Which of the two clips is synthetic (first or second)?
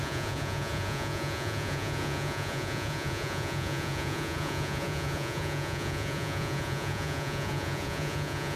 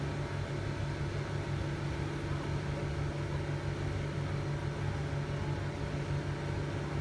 first